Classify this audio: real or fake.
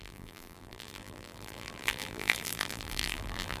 fake